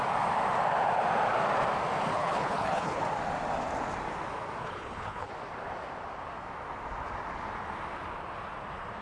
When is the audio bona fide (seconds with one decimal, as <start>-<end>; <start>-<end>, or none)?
0.0-2.1; 3.0-4.6; 5.3-9.0